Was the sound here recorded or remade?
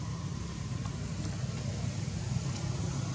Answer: recorded